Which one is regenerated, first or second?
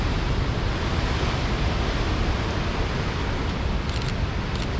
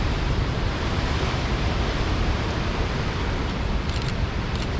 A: second